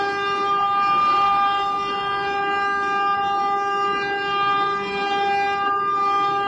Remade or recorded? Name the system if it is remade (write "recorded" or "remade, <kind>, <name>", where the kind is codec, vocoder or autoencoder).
recorded